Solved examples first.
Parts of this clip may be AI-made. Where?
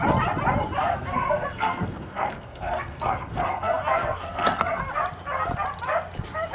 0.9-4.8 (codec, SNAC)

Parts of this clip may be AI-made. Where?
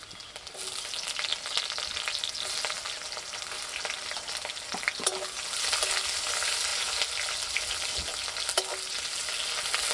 none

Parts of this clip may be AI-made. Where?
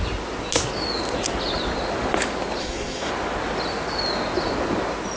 2.6-3.1 (codec, SNAC)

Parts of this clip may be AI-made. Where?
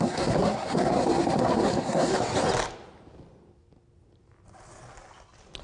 0.0-2.1 (codec, SNAC)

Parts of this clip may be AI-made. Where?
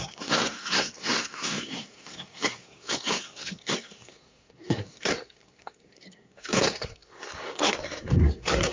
0.0-8.7 (codec, SNAC)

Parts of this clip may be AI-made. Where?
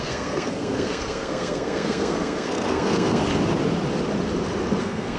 0.0-3.2 (codec, SNAC); 4.8-5.2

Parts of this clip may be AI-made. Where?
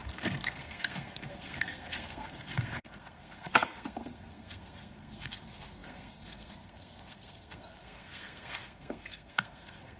0.0-10.0 (codec, SNAC)